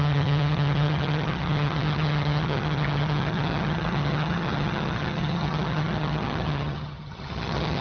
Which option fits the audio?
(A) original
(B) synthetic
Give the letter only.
B